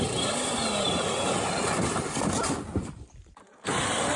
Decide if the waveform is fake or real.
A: real